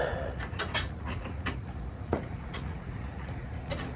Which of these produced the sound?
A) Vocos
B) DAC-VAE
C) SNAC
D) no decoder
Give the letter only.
A